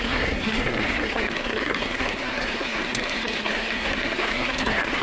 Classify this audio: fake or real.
fake